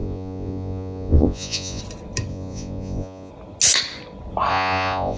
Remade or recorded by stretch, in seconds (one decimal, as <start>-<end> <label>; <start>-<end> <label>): 0.0-1.8 remade; 1.8-2.3 recorded; 2.3-3.3 remade; 3.3-4.5 recorded; 4.5-5.2 remade